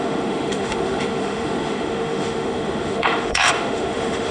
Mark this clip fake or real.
fake